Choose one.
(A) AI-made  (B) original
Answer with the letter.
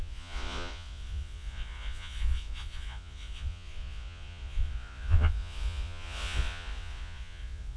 A